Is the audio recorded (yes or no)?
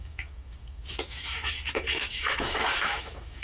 no